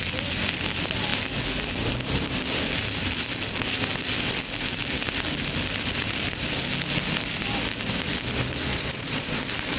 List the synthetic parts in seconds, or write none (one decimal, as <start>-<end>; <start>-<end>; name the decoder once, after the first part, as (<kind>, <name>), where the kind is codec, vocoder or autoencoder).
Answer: 8.7-9.4 (vocoder, Vocos)